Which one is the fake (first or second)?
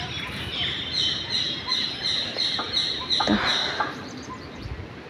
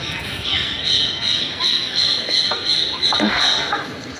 second